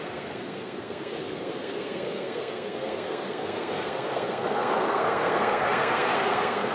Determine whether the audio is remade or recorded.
remade